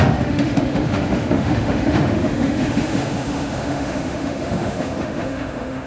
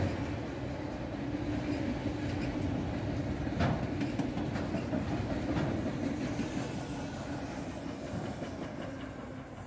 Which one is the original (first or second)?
second